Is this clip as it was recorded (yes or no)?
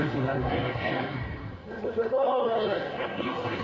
no